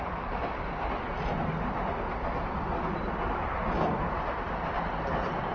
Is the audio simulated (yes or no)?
no